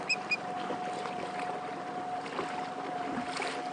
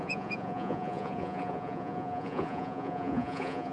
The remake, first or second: second